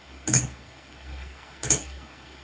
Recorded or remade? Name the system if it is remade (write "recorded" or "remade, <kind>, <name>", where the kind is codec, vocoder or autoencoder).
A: remade, codec, SNAC